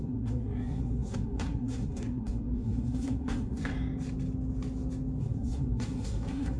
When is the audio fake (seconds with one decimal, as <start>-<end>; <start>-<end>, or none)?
0.0-3.7; 5.2-6.6